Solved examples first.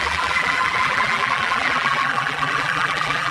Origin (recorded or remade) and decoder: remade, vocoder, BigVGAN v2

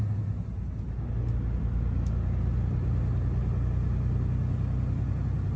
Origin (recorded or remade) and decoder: recorded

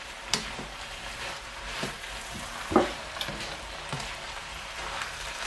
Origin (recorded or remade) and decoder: remade, vocoder, BigVGAN v2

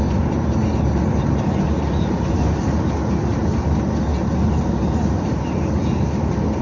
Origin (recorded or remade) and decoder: recorded